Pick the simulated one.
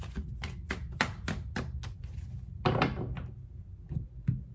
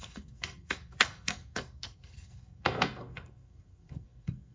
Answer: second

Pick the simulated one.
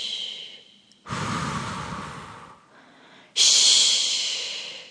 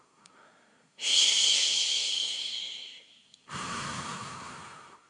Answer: second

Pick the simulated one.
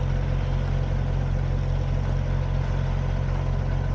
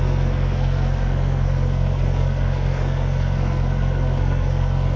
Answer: second